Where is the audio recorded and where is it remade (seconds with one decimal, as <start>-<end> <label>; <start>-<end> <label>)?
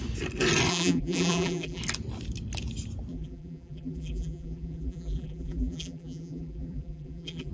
0.0-0.7 recorded; 0.7-1.8 remade; 1.8-3.1 recorded; 3.1-7.5 remade